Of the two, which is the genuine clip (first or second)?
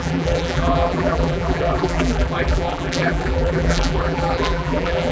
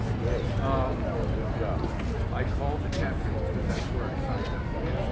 second